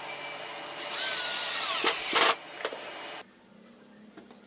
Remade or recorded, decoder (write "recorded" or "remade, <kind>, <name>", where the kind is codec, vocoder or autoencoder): recorded